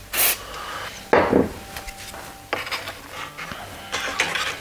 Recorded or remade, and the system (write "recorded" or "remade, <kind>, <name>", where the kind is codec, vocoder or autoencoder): recorded